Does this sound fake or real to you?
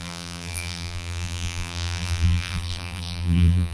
fake